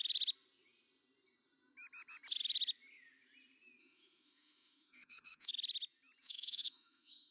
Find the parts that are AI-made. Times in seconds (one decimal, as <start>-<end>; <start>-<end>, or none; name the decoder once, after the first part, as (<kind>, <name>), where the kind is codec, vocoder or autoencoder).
3.8-5.5 (autoencoder, DAC-VAE); 6.2-7.3